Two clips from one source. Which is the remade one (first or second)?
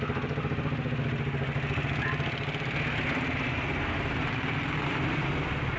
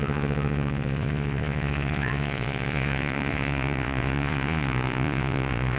second